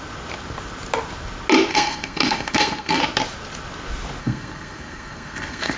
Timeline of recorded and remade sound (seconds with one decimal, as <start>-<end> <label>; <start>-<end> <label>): 0.0-1.7 recorded; 1.7-3.0 remade; 3.0-4.2 recorded; 4.2-5.8 remade